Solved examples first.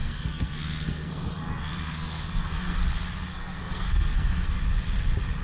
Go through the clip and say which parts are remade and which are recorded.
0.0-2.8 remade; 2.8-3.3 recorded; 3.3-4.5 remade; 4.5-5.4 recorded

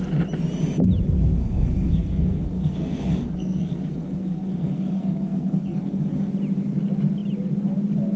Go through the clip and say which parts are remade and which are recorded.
0.0-1.4 recorded; 1.4-6.3 remade; 6.3-8.2 recorded

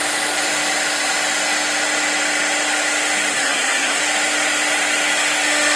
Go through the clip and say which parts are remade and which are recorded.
0.0-3.3 recorded; 3.3-4.0 remade; 4.0-5.8 recorded

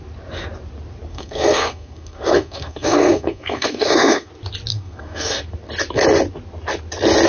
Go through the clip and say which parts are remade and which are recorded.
0.0-1.1 recorded; 1.1-4.3 remade; 4.3-4.7 recorded; 4.7-5.4 remade; 5.4-7.3 recorded

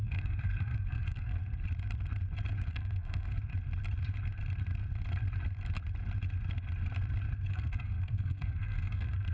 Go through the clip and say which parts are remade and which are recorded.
0.0-1.4 remade; 1.4-2.7 recorded; 2.7-3.4 remade; 3.4-7.5 recorded; 7.5-9.3 remade

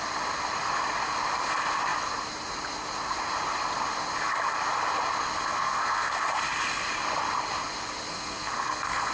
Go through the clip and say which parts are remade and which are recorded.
0.0-5.5 recorded; 5.5-6.1 remade; 6.1-8.1 recorded; 8.1-9.1 remade

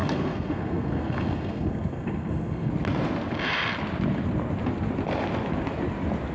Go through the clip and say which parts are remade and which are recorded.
0.0-2.7 remade; 2.7-6.3 recorded